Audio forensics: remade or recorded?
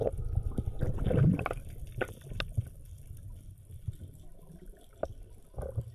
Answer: recorded